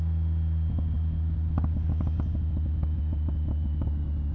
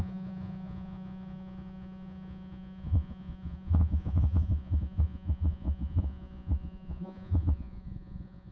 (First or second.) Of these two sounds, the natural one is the first